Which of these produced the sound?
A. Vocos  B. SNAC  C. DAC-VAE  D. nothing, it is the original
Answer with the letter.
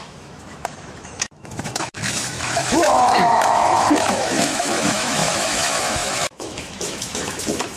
C